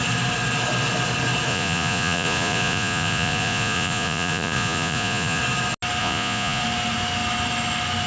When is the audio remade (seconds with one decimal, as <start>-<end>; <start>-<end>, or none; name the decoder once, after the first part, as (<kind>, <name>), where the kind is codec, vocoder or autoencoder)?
1.5-5.4 (vocoder, Vocos); 6.0-6.6